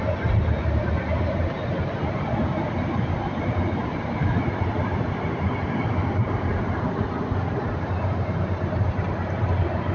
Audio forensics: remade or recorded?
recorded